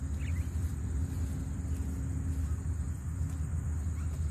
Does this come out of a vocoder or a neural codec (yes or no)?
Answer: no